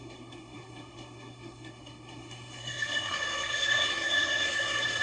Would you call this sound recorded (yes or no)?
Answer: no